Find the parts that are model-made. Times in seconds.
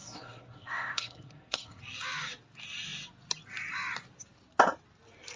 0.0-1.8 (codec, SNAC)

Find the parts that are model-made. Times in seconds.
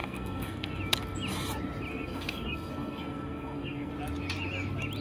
0.0-0.8 (codec, SNAC); 1.9-3.9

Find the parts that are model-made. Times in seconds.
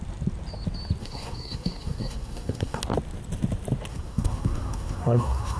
1.0-2.8 (codec, SNAC); 3.9-5.6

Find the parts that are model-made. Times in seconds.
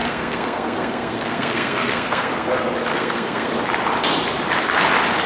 0.0-2.5 (codec, SNAC); 2.9-3.5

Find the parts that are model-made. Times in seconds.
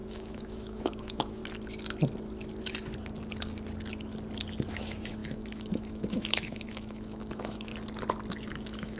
0.0-1.4 (autoencoder, DAC-VAE); 4.7-7.7; 8.5-9.0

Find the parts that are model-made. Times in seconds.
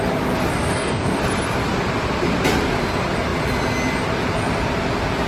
0.5-1.2 (codec, DAC)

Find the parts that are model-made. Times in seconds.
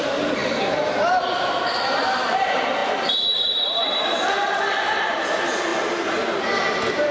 0.0-0.4 (vocoder, BigVGAN v2); 1.1-5.7